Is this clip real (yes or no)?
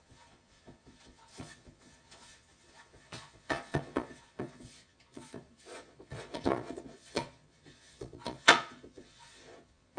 no